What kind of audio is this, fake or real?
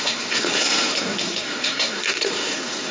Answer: fake